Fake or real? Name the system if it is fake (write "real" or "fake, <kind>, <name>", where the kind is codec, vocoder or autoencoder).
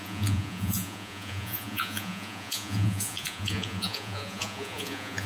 fake, vocoder, Vocos